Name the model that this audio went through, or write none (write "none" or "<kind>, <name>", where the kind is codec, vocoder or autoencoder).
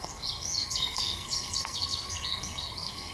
codec, SNAC